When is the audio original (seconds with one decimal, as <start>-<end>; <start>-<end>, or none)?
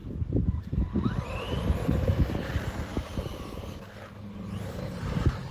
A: 1.4-5.5